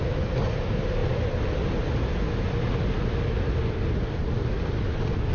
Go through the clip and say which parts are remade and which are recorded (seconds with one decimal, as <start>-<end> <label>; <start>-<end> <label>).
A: 0.0-5.3 recorded